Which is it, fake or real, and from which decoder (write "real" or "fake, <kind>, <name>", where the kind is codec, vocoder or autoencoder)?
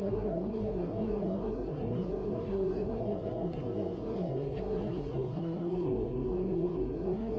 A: fake, codec, SNAC